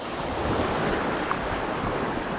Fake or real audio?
real